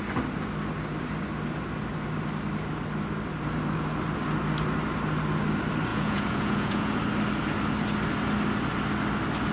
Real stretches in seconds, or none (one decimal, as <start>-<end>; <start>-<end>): 0.0-5.9; 6.9-9.5